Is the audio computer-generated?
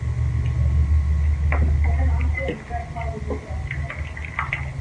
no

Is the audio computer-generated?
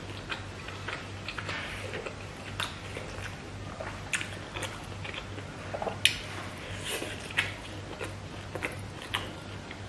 no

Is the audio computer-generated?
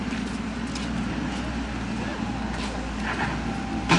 no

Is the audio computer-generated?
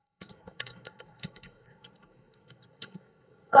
yes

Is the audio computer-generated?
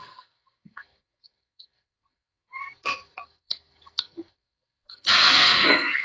yes